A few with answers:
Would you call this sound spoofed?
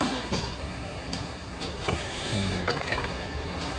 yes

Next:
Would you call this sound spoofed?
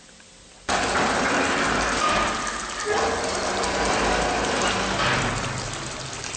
no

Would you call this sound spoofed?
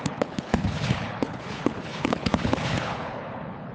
yes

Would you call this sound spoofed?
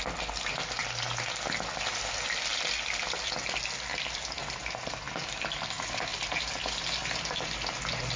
no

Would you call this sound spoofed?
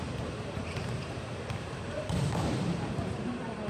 yes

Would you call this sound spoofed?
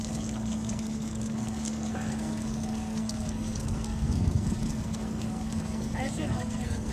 yes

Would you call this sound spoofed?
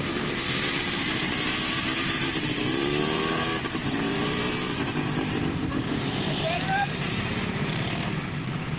yes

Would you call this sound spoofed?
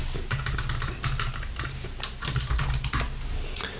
no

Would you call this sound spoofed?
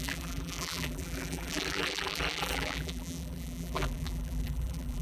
yes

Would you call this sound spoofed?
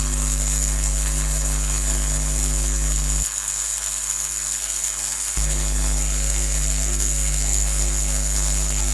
yes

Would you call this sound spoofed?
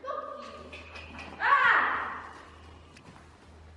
no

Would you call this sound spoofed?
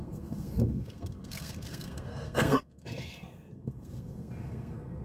yes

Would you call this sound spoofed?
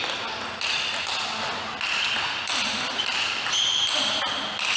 no